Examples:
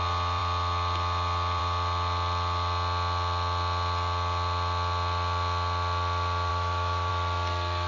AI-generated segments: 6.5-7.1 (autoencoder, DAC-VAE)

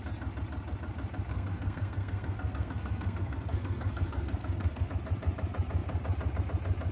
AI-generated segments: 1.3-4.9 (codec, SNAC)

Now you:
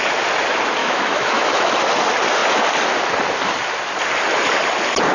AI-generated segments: 0.8-1.8 (autoencoder, DAC-VAE)